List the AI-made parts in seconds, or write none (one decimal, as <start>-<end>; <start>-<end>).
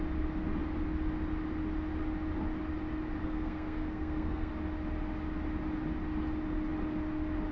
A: 3.2-4.5